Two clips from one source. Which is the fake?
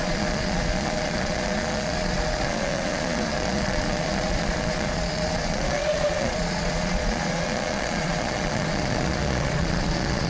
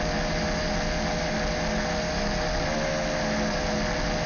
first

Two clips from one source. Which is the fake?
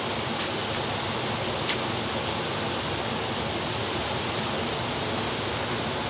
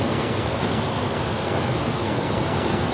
second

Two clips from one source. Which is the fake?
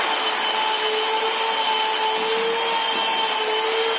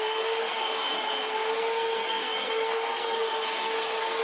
second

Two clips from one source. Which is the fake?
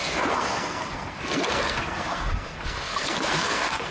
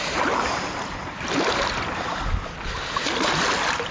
first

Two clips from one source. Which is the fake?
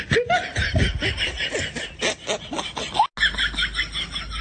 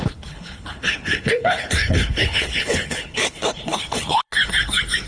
second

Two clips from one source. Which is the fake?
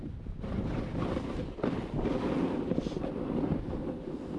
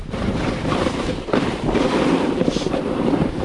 second